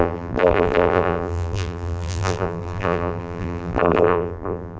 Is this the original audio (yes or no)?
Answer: no